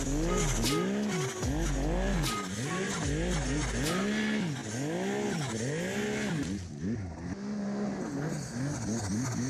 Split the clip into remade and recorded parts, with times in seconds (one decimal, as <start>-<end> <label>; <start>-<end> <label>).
0.0-9.5 recorded